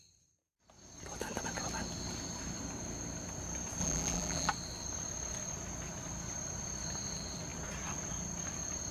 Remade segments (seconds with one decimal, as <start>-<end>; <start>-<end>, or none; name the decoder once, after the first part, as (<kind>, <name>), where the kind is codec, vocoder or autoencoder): 3.8-4.5 (vocoder, BigVGAN v2)